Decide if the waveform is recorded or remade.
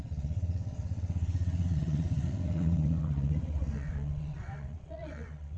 remade